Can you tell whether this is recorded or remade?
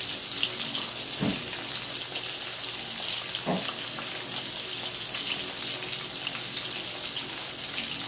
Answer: recorded